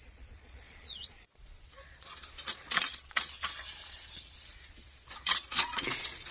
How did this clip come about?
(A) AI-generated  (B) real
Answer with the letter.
A